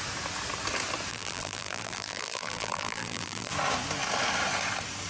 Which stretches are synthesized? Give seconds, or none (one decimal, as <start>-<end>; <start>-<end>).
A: 1.1-3.5